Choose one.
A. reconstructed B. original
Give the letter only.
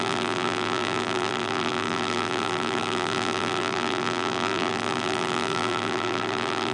A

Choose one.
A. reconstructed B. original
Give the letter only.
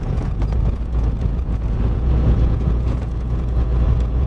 A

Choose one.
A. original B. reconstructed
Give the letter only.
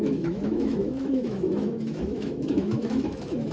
B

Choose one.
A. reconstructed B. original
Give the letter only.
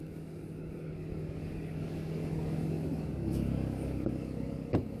A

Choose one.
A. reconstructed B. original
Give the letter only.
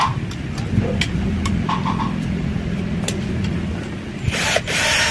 B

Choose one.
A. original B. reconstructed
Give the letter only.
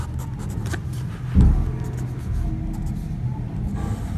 A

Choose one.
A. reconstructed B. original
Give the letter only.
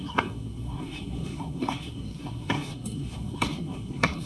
A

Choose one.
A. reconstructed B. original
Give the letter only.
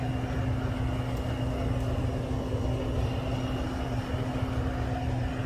B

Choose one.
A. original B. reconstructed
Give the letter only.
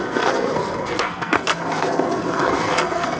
B